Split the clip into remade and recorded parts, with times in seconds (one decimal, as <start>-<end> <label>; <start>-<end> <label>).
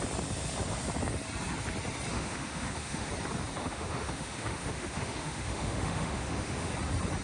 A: 0.0-2.1 recorded; 2.1-3.1 remade; 3.1-3.6 recorded; 3.6-6.7 remade; 6.7-7.2 recorded